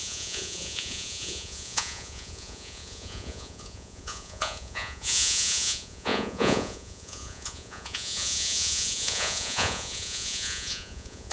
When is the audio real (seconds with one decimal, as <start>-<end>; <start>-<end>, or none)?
none